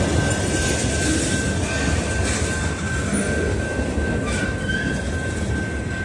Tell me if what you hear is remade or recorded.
recorded